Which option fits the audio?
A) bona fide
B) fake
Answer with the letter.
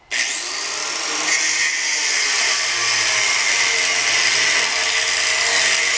A